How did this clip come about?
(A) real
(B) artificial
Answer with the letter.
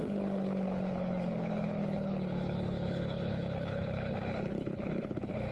B